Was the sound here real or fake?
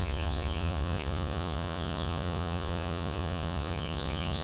fake